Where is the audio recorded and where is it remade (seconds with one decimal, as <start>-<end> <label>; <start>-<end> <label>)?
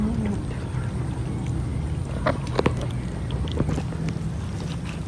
0.0-5.1 recorded